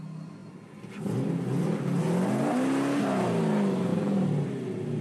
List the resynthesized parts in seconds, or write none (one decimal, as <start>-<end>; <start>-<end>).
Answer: 3.9-4.5